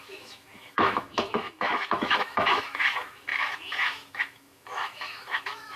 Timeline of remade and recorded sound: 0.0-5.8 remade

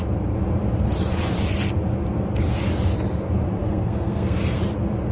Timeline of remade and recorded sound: 0.0-3.6 recorded; 3.6-4.6 remade; 4.6-5.1 recorded

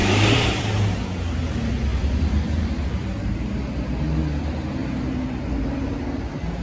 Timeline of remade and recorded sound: 0.0-0.6 remade; 0.6-1.9 recorded; 1.9-4.0 remade; 4.0-4.8 recorded; 4.8-6.0 remade; 6.0-6.6 recorded

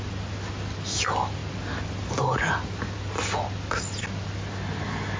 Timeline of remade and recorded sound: 0.0-5.2 recorded

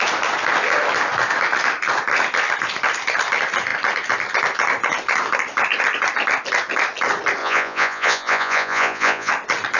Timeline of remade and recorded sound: 0.0-7.4 recorded; 7.4-9.3 remade; 9.3-9.8 recorded

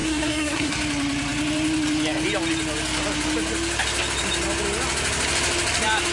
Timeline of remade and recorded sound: 0.0-0.7 remade; 0.7-6.1 recorded

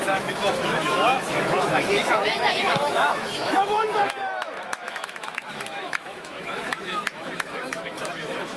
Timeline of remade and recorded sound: 0.0-8.6 remade

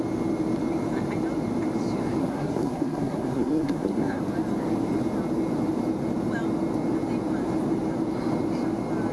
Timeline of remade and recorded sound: 0.0-2.2 recorded; 2.2-4.2 remade; 4.2-9.1 recorded